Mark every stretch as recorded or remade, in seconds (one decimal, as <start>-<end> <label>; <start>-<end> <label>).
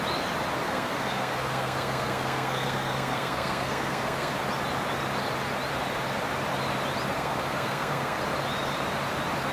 0.0-0.6 recorded; 0.6-4.3 remade; 4.3-7.1 recorded; 7.1-8.2 remade; 8.2-9.5 recorded